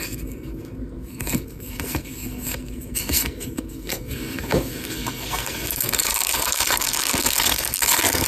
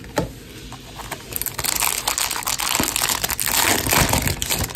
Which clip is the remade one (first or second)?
first